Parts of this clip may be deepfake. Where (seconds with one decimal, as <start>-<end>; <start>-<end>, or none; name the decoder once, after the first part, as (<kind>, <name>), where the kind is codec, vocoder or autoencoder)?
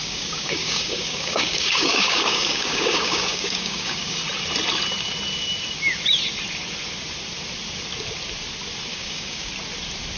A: 0.0-4.2 (codec, DAC); 8.9-9.5